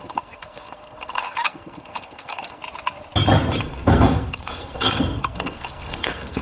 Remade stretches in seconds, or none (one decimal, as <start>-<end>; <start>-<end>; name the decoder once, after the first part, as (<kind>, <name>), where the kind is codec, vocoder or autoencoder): 0.0-2.6 (codec, SNAC); 3.6-6.4